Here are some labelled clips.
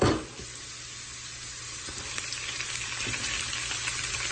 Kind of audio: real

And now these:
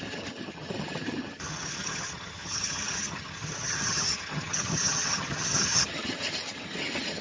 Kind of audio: fake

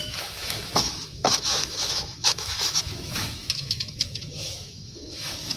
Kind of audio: fake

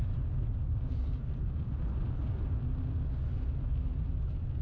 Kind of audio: real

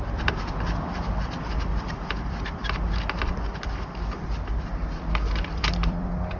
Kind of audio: fake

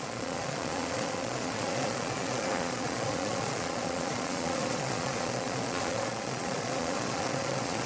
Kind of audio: fake